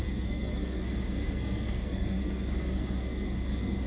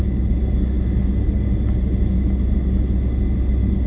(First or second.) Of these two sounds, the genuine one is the second